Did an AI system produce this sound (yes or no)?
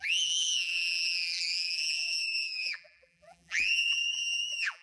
yes